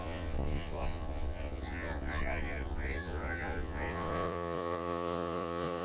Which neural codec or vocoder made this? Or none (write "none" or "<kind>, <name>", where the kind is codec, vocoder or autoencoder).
vocoder, Vocos